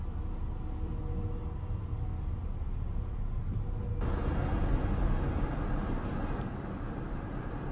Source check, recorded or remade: recorded